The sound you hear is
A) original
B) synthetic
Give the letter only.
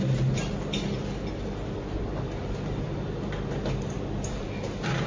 A